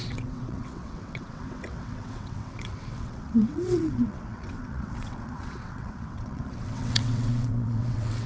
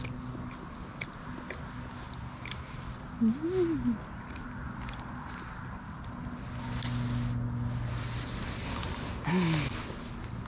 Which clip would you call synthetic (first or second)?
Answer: first